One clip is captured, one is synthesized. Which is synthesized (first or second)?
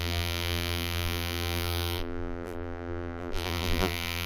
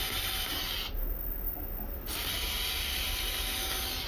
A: first